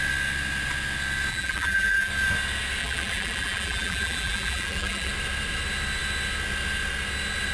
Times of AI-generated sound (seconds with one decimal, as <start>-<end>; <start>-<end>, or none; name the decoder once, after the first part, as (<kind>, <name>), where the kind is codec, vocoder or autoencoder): 1.3-2.1 (vocoder, BigVGAN v2); 2.8-5.1